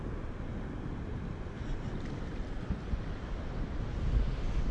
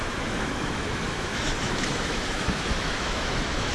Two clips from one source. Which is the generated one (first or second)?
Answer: second